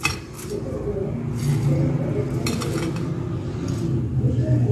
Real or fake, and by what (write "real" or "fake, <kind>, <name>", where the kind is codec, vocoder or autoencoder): real